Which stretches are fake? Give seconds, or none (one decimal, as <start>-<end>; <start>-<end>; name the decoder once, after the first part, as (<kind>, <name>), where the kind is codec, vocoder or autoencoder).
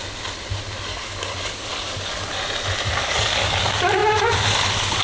0.9-2.4 (codec, DAC); 3.0-3.6